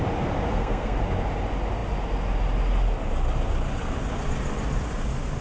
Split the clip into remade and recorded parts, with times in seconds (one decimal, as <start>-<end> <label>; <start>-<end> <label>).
0.0-0.5 recorded; 0.5-1.0 remade; 1.0-5.4 recorded